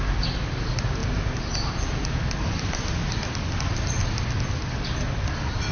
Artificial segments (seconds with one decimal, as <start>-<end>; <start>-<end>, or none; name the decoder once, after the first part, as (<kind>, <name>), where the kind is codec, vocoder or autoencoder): none